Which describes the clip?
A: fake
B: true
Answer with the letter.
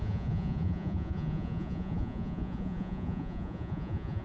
A